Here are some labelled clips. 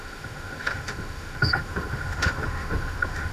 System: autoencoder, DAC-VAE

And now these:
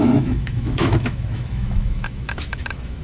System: autoencoder, DAC-VAE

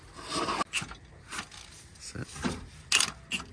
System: none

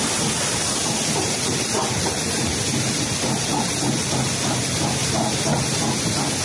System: none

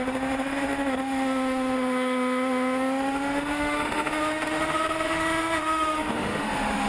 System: autoencoder, DAC-VAE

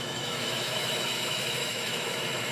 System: autoencoder, DAC-VAE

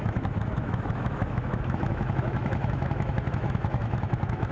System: autoencoder, DAC-VAE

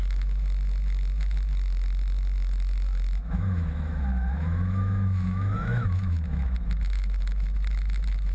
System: autoencoder, DAC-VAE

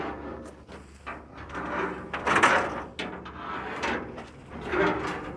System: none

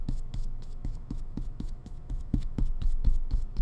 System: autoencoder, DAC-VAE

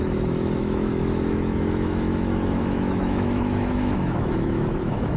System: autoencoder, DAC-VAE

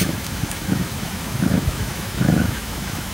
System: autoencoder, DAC-VAE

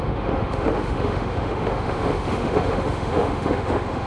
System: autoencoder, DAC-VAE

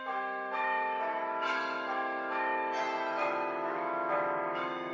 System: autoencoder, DAC-VAE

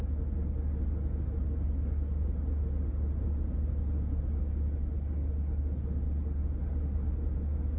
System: none